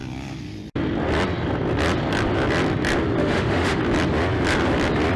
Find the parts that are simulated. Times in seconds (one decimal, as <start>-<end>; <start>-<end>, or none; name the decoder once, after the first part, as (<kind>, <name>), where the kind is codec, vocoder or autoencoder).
3.2-3.8 (autoencoder, DAC-VAE)